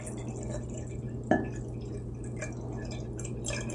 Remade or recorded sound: recorded